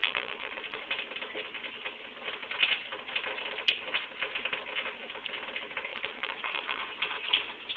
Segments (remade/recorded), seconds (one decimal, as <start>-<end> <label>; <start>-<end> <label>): 0.0-0.9 remade; 0.9-5.9 recorded; 5.9-6.8 remade; 6.8-7.8 recorded

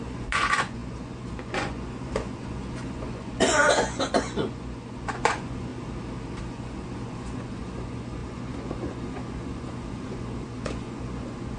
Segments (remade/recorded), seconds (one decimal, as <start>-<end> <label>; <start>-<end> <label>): 0.0-5.7 remade; 5.7-6.4 recorded; 6.4-11.6 remade